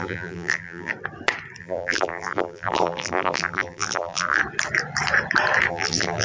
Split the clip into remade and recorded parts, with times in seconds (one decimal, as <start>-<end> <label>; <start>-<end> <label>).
0.0-0.9 remade; 0.9-1.6 recorded; 1.6-4.4 remade; 4.4-5.7 recorded; 5.7-6.2 remade